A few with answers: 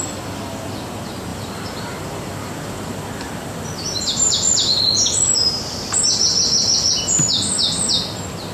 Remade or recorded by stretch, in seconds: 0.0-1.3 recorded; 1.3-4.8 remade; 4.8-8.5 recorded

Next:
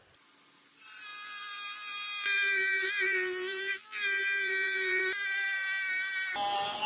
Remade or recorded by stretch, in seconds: 0.0-1.1 recorded; 1.1-5.0 remade; 5.0-6.9 recorded

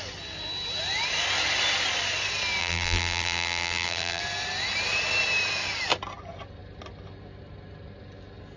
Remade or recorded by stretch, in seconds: 0.0-2.6 recorded; 2.6-4.2 remade; 4.2-8.6 recorded